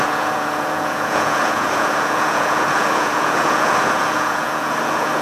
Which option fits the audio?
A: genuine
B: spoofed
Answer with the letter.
B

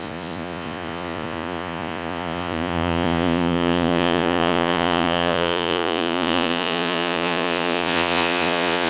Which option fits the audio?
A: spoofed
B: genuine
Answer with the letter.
A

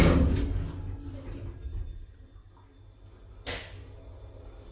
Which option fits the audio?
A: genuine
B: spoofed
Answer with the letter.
A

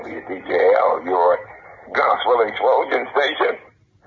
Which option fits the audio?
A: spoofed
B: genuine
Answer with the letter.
B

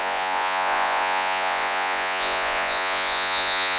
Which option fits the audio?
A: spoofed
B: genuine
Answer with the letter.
A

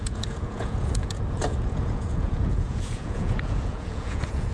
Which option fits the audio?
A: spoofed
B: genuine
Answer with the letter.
A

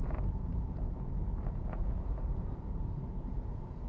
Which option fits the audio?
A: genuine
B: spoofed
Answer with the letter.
B